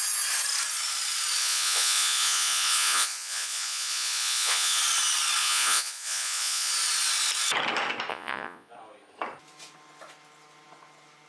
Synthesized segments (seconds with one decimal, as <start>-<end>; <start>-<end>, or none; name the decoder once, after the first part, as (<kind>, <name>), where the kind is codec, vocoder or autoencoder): 1.4-4.8 (vocoder, Vocos); 5.4-6.7; 8.1-8.7